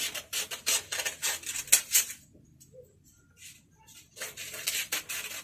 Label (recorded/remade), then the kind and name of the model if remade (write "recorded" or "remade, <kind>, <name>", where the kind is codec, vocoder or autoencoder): recorded